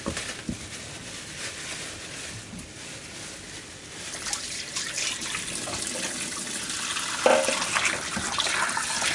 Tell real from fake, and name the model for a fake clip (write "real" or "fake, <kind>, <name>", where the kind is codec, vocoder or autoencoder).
real